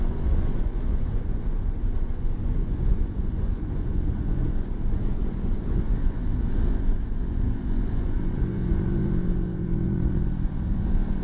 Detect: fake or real fake